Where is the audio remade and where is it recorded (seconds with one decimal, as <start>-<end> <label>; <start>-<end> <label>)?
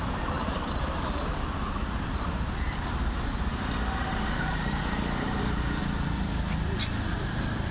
0.0-5.8 remade; 5.8-7.0 recorded; 7.0-7.7 remade